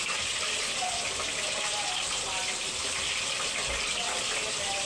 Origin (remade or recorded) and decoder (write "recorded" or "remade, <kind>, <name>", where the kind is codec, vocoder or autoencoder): recorded